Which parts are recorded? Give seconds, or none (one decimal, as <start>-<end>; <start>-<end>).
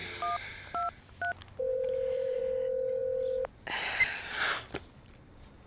0.0-1.7; 2.4-5.7